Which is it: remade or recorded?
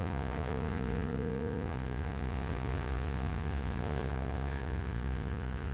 remade